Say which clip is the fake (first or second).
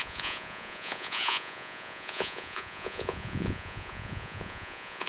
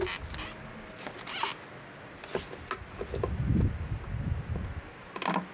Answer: first